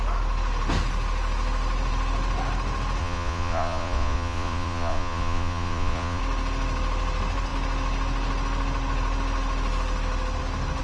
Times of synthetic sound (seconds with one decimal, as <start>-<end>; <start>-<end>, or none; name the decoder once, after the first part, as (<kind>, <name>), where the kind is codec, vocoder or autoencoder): 3.0-6.2 (vocoder, Vocos)